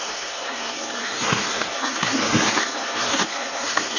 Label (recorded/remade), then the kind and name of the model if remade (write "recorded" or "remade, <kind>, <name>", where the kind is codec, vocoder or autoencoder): remade, codec, SNAC